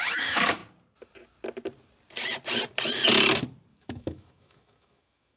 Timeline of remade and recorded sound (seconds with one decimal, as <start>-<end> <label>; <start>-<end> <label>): 0.0-0.6 remade; 0.6-3.7 recorded; 3.7-5.4 remade